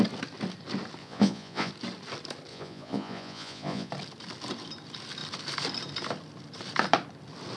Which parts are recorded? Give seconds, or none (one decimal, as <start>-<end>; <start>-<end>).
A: 0.0-1.0; 1.7-2.5; 3.9-7.6